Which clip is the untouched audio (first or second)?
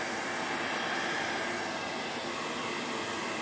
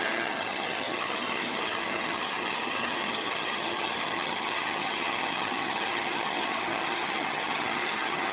first